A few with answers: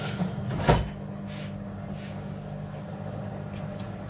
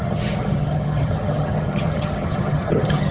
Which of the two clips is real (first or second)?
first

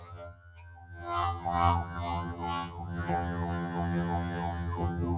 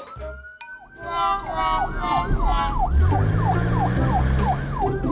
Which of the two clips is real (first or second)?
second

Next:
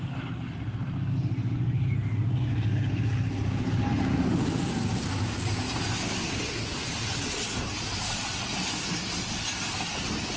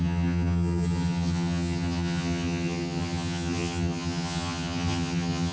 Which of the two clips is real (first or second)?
first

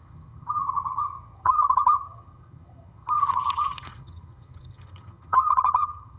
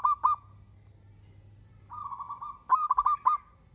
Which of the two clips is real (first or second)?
second